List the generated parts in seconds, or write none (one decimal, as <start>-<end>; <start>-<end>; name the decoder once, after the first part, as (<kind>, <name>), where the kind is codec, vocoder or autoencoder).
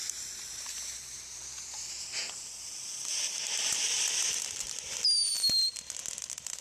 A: 0.4-1.4 (vocoder, BigVGAN v2)